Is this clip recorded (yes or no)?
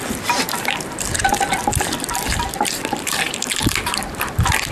no